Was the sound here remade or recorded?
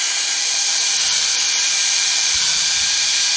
remade